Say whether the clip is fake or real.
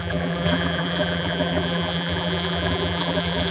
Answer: fake